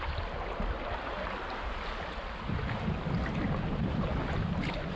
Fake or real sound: real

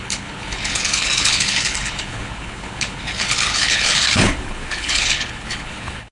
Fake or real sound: fake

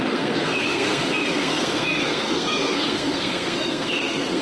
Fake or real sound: fake